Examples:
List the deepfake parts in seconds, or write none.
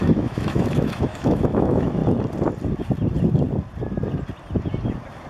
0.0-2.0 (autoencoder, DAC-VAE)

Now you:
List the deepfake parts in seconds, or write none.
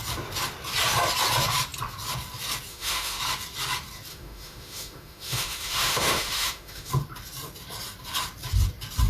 2.7-3.2 (autoencoder, DAC-VAE); 4.1-6.9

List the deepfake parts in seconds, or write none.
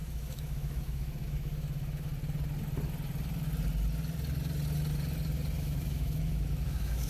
0.0-2.1 (autoencoder, DAC-VAE); 5.6-7.1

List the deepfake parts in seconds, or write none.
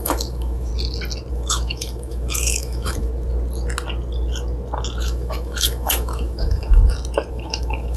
0.0-0.7 (autoencoder, DAC-VAE); 1.3-3.1; 5.0-6.8; 7.3-8.0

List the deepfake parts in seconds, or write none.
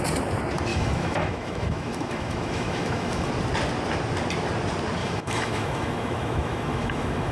0.7-3.3 (autoencoder, DAC-VAE); 5.0-7.3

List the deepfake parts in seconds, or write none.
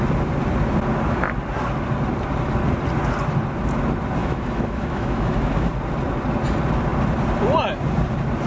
4.2-5.7 (autoencoder, DAC-VAE)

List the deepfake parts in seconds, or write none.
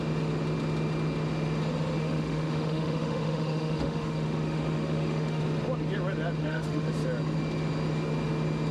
2.0-5.4 (autoencoder, DAC-VAE); 6.4-6.9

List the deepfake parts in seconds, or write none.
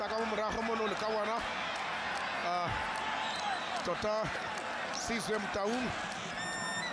none